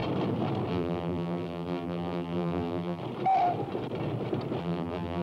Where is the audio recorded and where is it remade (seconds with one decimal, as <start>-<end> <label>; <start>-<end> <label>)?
0.0-0.7 recorded; 0.7-3.0 remade; 3.0-4.6 recorded; 4.6-5.2 remade